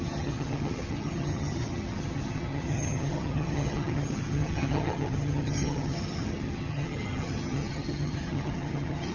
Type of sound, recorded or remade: remade